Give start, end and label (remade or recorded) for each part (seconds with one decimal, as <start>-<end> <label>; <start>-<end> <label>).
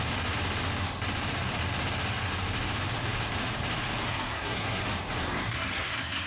0.0-4.1 recorded; 4.1-4.8 remade; 4.8-5.4 recorded; 5.4-6.3 remade